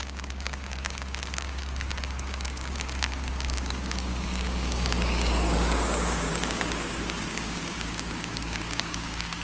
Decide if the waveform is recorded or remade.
remade